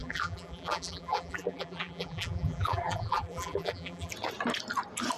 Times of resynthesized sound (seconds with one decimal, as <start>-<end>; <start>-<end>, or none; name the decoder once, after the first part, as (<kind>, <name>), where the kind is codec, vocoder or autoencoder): 0.0-4.1 (vocoder, BigVGAN v2)